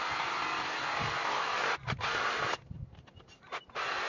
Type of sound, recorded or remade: recorded